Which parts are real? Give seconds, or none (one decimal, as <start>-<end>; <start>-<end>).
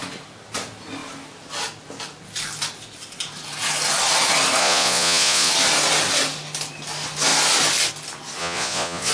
0.0-4.6; 5.5-8.4